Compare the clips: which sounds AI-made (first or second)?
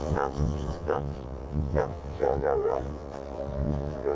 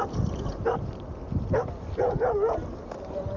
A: first